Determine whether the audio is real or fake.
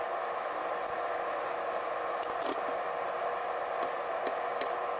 real